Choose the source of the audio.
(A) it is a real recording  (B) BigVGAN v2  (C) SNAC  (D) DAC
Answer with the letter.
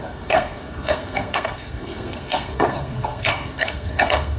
C